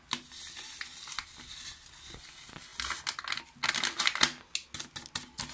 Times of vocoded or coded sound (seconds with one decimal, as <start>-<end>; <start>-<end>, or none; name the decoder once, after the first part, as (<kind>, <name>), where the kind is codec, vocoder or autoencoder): none